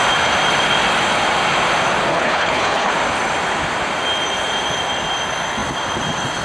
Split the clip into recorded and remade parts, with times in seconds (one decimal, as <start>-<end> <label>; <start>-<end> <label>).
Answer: 0.0-2.1 recorded; 2.1-2.9 remade; 2.9-6.4 recorded